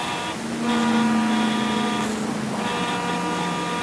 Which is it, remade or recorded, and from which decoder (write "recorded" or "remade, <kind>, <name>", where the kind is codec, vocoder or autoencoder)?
recorded